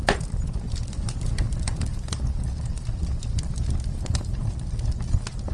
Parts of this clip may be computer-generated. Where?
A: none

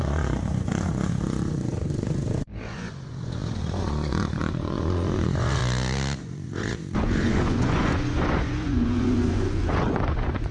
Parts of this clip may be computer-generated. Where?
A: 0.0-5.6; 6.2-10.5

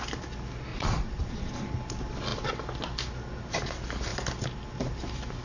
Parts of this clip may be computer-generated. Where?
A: 0.7-1.5

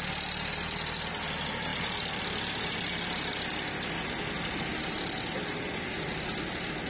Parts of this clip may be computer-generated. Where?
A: none

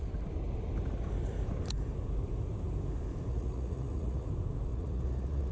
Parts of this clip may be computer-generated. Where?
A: 3.3-4.3; 4.7-5.5